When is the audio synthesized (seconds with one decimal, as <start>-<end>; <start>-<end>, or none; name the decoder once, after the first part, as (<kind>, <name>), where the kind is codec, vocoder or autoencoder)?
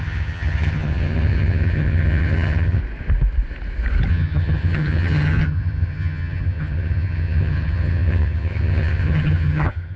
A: 0.0-2.8 (vocoder, HiFi-GAN); 4.1-10.0